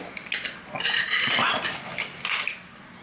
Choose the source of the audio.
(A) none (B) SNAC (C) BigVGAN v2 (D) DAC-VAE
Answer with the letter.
A